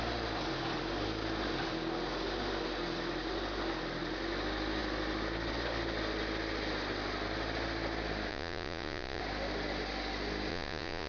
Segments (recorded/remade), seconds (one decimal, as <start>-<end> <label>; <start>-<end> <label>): 0.0-8.3 recorded; 8.3-9.2 remade; 9.2-10.5 recorded; 10.5-11.1 remade